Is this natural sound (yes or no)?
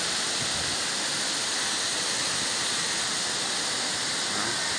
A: yes